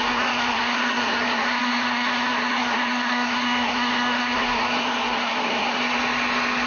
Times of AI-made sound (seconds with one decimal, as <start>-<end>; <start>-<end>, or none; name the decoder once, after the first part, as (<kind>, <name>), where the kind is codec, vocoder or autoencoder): 0.0-5.8 (codec, SNAC)